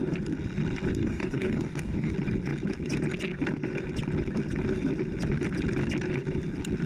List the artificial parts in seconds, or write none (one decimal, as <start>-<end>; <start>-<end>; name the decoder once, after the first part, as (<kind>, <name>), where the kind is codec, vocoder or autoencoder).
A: 1.0-2.1 (codec, DAC)